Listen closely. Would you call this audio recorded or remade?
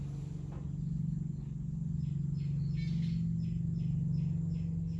recorded